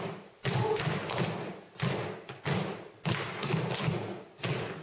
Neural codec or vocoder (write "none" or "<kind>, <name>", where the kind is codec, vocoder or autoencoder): none